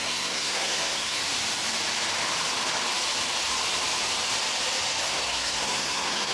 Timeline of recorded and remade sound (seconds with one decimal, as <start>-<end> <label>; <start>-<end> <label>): 0.0-1.2 remade; 1.2-5.0 recorded; 5.0-6.3 remade